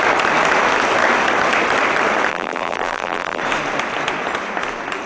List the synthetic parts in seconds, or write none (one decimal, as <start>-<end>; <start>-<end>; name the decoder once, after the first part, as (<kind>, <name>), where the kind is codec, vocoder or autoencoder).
2.3-3.4 (vocoder, BigVGAN v2)